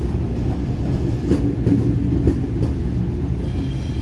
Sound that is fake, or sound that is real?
real